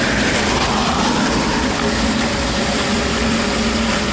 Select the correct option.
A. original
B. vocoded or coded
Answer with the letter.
A